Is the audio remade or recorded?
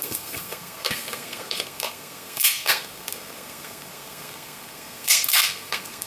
remade